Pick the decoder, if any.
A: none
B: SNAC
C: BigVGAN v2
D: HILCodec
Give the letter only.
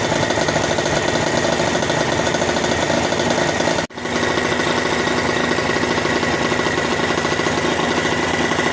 A